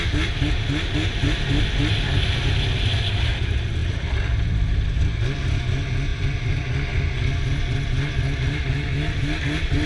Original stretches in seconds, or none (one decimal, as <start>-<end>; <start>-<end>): 0.0-3.8; 5.0-6.1; 7.0-9.9